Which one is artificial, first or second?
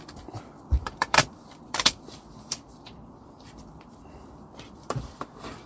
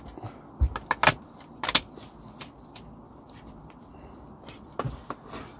first